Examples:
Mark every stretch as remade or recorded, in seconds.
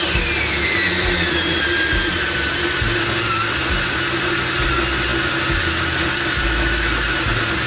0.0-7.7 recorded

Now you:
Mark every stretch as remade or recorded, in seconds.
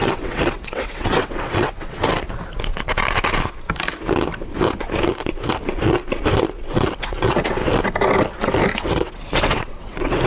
0.0-2.1 remade; 2.1-7.0 recorded; 7.0-7.6 remade; 7.6-8.8 recorded; 8.8-10.3 remade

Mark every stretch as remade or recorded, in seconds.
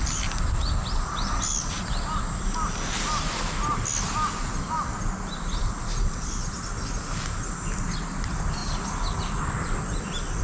0.0-10.4 recorded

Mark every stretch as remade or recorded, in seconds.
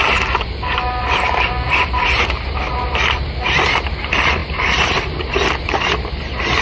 0.0-1.9 remade; 1.9-4.4 recorded; 4.4-5.7 remade; 5.7-6.6 recorded